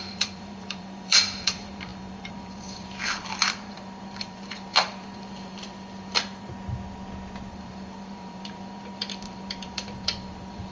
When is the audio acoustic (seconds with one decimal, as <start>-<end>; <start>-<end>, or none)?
6.5-7.5